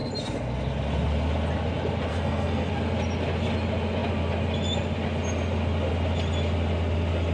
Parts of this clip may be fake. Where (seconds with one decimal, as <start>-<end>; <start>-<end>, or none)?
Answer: 2.1-2.7